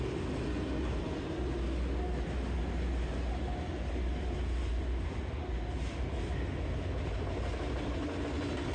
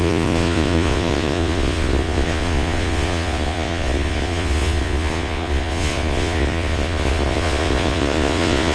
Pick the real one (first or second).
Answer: first